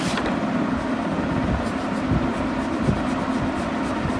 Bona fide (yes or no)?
yes